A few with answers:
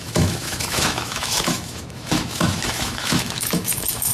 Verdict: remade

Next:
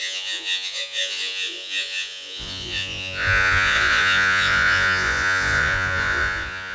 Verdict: remade